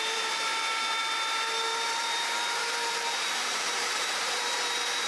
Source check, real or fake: fake